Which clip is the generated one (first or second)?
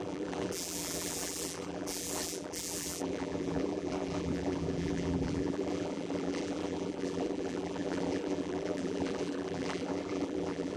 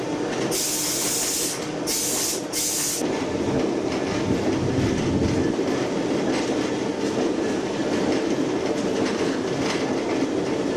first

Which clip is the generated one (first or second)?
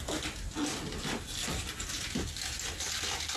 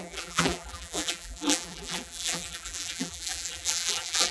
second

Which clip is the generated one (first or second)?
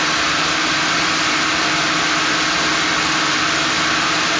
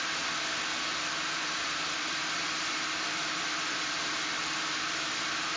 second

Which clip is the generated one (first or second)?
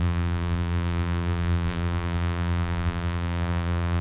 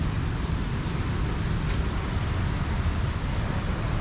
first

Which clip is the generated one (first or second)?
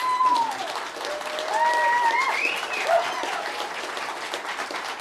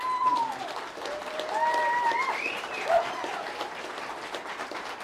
second